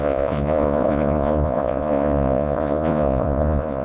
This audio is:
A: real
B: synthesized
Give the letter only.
B